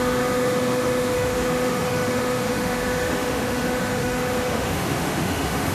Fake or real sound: fake